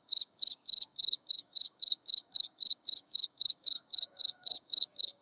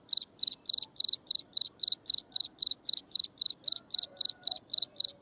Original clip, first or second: second